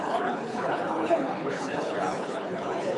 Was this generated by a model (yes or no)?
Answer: yes